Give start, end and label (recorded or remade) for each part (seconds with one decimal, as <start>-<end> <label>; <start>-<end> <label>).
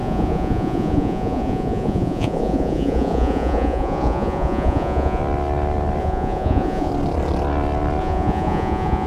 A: 0.0-5.2 remade; 5.2-6.0 recorded; 6.0-6.9 remade; 6.9-8.0 recorded; 8.0-9.1 remade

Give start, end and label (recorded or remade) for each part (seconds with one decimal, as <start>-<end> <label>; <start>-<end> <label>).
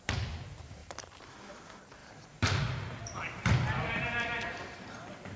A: 0.0-2.0 recorded; 2.0-4.8 remade; 4.8-5.4 recorded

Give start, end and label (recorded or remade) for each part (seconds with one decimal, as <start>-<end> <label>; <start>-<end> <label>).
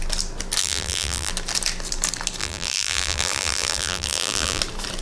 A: 0.0-0.6 recorded; 0.6-1.3 remade; 1.3-2.4 recorded; 2.4-4.6 remade; 4.6-5.0 recorded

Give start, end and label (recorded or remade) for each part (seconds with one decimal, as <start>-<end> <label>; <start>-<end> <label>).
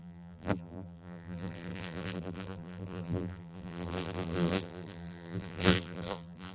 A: 0.0-6.5 remade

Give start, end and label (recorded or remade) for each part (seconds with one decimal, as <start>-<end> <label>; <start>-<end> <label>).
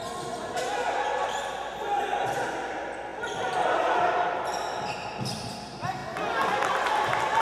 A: 0.0-0.7 remade; 0.7-2.6 recorded; 2.6-6.0 remade; 6.0-6.7 recorded; 6.7-7.4 remade